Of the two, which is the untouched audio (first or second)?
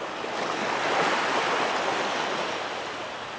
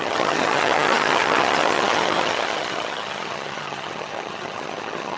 first